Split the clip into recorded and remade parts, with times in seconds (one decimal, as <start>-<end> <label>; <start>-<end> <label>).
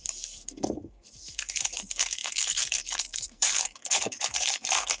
0.0-5.0 remade